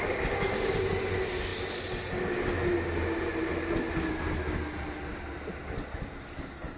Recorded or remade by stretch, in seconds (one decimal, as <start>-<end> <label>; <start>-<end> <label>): 0.0-6.8 recorded